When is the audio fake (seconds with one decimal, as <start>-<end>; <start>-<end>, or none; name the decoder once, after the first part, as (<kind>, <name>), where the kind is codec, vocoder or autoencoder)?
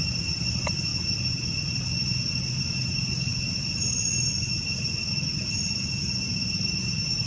0.0-0.9 (vocoder, BigVGAN v2); 2.6-3.3; 6.3-7.3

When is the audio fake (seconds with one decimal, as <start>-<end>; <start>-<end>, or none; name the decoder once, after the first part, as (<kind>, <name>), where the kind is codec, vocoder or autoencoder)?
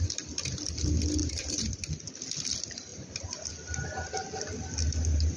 1.2-1.9 (vocoder, BigVGAN v2); 2.9-3.4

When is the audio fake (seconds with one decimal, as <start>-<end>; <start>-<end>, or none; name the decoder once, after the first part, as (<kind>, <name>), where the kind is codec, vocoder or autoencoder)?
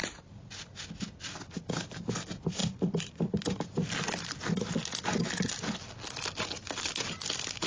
none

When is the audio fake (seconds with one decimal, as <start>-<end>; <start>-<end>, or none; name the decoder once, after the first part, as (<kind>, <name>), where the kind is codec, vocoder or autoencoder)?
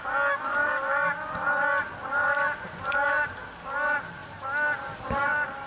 none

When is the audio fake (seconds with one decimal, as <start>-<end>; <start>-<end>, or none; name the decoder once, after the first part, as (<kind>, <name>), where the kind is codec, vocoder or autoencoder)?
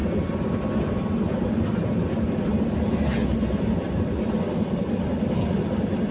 none